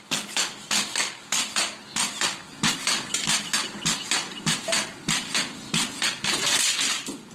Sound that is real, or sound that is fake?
real